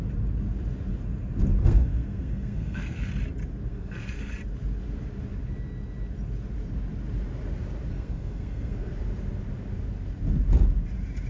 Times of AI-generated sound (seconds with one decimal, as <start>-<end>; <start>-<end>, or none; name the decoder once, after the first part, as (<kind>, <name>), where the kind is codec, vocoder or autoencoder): 1.6-3.1 (codec, SNAC); 3.7-4.3; 7.9-8.9